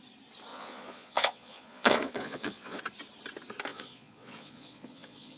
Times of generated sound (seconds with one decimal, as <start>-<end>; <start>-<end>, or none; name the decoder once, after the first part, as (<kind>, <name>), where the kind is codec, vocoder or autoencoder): 0.5-2.8 (vocoder, Vocos); 3.7-5.4